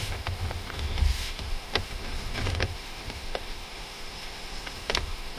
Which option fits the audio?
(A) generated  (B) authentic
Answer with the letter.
A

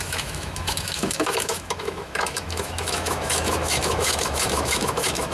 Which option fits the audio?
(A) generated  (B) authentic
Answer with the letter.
A